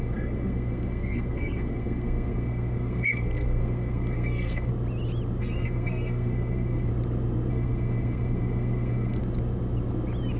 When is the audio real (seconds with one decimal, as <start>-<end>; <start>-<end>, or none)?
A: 4.7-5.4; 6.9-7.5; 9.2-10.4